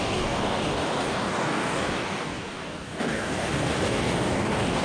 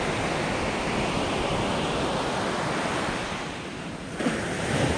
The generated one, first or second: first